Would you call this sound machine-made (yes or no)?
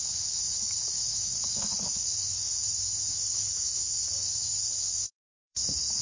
yes